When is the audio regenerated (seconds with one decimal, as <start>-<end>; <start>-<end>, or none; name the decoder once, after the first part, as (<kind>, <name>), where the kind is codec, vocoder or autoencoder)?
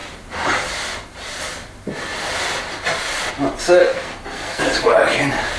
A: 3.8-4.6 (codec, SNAC)